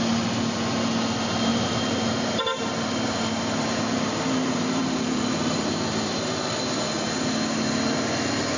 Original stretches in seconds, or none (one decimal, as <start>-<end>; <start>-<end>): 0.0-1.5; 6.5-8.6

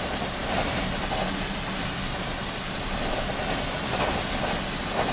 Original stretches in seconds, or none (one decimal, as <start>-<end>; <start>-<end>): 0.0-5.1

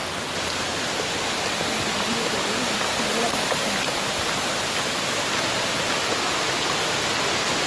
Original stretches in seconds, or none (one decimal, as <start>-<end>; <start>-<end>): 0.0-7.7

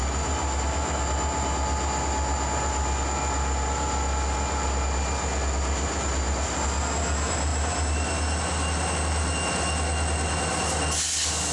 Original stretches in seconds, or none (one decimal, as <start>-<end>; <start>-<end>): 0.0-11.5